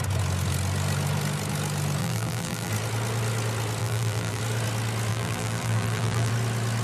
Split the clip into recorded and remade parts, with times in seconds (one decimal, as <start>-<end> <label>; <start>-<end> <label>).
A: 0.0-2.0 recorded; 2.0-2.7 remade; 2.7-3.8 recorded; 3.8-4.4 remade; 4.4-5.1 recorded; 5.1-6.3 remade; 6.3-6.8 recorded

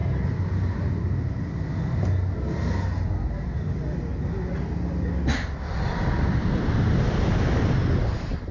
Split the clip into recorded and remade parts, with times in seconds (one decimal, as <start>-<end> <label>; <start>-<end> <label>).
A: 0.0-8.5 recorded

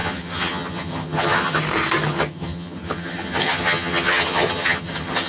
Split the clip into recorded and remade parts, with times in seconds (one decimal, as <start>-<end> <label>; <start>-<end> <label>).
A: 0.0-1.6 remade; 1.6-2.1 recorded; 2.1-5.3 remade

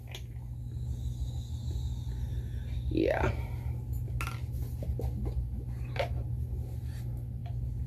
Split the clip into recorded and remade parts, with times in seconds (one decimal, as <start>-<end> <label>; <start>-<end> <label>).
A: 0.0-7.9 recorded

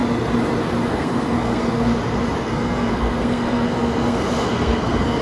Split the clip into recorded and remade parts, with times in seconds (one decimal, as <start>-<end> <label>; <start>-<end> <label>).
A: 0.0-0.9 recorded; 0.9-1.9 remade; 1.9-2.4 recorded; 2.4-5.2 remade

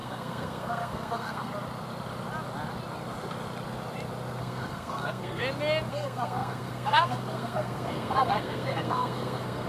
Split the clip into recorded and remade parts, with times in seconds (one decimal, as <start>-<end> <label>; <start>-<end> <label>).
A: 0.0-1.5 remade; 1.5-4.4 recorded; 4.4-5.4 remade; 5.4-5.9 recorded; 5.9-9.7 remade

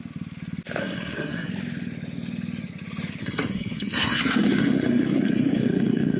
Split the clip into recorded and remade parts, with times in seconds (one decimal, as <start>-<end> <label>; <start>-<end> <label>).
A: 0.0-0.8 recorded; 0.8-1.5 remade; 1.5-3.2 recorded; 3.2-6.2 remade

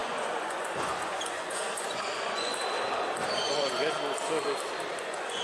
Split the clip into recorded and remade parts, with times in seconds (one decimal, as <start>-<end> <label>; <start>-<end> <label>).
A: 0.0-2.5 remade; 2.5-3.3 recorded; 3.3-3.8 remade; 3.8-5.0 recorded; 5.0-5.4 remade